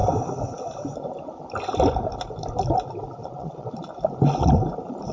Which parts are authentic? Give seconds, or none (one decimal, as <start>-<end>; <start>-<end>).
0.0-3.2; 3.7-5.1

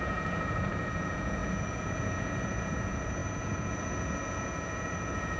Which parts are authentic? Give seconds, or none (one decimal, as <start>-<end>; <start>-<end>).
none

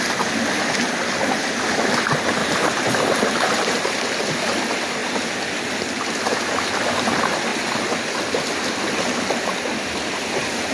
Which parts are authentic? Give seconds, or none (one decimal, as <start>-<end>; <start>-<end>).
0.0-2.4; 3.4-10.7

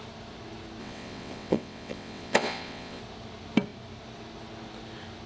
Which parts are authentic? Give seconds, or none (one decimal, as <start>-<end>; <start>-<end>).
0.0-0.8; 3.0-5.3

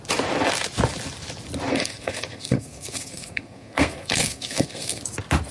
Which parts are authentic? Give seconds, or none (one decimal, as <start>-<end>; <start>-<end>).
0.0-1.7; 5.0-5.5

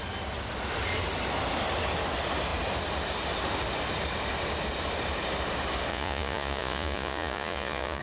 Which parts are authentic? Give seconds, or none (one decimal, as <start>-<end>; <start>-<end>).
0.0-5.9

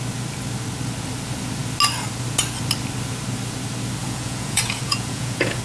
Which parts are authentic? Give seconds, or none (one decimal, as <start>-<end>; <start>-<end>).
0.0-4.0